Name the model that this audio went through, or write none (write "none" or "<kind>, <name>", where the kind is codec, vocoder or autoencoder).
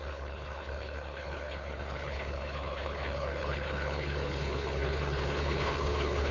codec, HILCodec